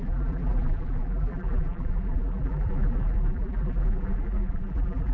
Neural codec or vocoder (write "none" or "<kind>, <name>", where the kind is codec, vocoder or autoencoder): vocoder, BigVGAN v2